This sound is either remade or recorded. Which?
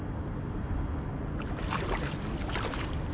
recorded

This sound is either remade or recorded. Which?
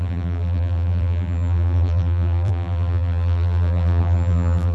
remade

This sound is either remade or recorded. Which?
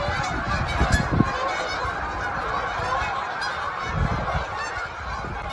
recorded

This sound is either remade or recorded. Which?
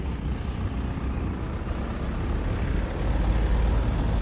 recorded